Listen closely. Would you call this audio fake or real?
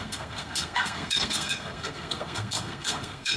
fake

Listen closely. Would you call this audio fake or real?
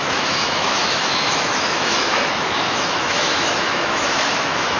fake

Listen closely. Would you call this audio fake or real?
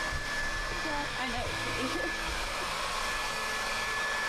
real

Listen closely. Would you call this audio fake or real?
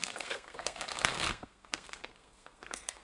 fake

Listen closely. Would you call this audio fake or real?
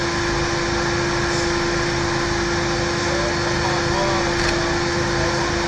real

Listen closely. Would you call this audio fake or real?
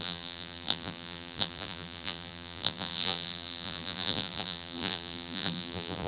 fake